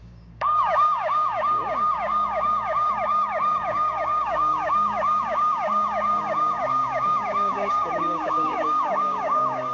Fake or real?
fake